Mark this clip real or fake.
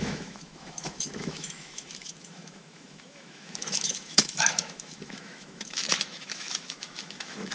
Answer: fake